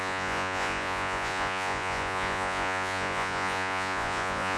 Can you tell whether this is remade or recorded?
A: remade